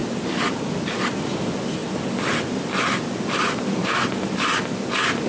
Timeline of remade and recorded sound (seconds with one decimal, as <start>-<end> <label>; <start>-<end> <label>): 0.0-5.3 recorded